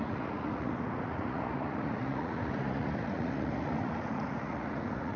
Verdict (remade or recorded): remade